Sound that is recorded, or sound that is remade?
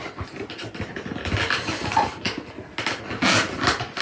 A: recorded